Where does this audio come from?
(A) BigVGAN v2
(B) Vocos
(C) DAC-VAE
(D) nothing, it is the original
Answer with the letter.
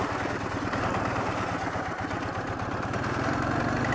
A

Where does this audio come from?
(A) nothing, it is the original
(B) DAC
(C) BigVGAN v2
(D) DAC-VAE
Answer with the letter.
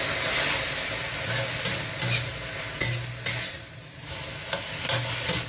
A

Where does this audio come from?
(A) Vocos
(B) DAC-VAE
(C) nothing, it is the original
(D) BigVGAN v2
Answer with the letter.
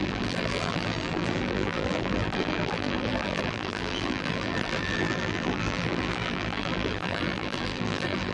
D